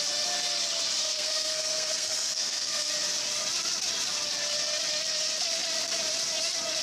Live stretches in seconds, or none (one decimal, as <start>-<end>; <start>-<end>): 0.0-1.0; 2.9-6.8